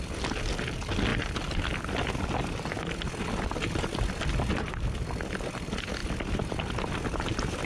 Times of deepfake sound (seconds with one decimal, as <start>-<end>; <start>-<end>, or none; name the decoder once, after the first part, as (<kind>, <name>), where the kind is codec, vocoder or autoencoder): none